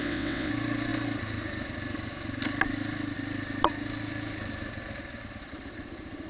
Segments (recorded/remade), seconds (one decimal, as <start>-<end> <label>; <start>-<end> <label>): 0.0-0.5 remade; 0.5-6.3 recorded